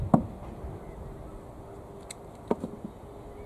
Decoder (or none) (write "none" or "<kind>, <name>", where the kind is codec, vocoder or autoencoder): none